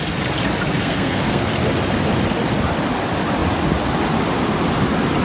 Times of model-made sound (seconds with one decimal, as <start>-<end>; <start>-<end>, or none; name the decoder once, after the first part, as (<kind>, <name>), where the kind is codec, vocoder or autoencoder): 0.8-1.5 (codec, SNAC)